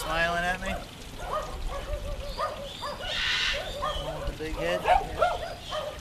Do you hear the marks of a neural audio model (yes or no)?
no